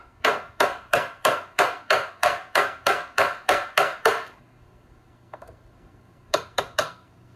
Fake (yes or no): yes